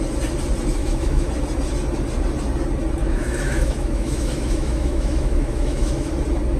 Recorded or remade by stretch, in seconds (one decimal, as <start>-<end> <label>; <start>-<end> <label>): 0.0-0.8 recorded; 0.8-1.3 remade; 1.3-3.0 recorded; 3.0-6.1 remade; 6.1-6.6 recorded